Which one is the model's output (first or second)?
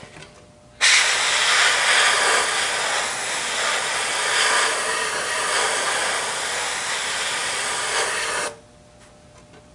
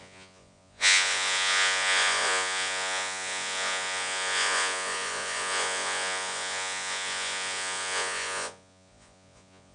second